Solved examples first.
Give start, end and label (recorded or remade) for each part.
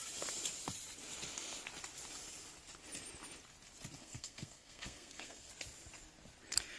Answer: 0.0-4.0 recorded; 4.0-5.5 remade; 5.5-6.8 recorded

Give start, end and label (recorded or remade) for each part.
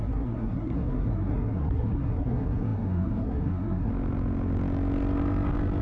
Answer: 0.0-3.9 remade; 3.9-5.8 recorded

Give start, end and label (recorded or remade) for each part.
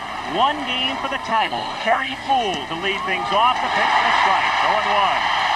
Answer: 0.0-1.3 recorded; 1.3-2.3 remade; 2.3-5.6 recorded